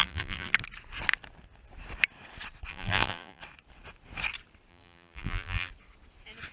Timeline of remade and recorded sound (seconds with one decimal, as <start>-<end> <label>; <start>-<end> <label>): 0.0-0.5 remade; 0.5-2.7 recorded; 2.7-3.4 remade; 3.4-4.7 recorded; 4.7-5.7 remade; 5.7-6.5 recorded